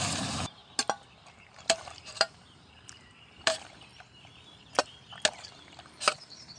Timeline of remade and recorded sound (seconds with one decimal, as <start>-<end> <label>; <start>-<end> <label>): 0.0-0.6 remade; 0.6-1.3 recorded; 1.3-3.9 remade; 3.9-6.0 recorded; 6.0-6.6 remade